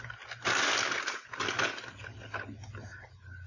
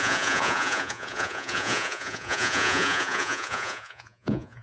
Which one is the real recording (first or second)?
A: first